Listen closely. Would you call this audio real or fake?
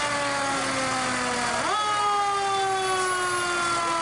real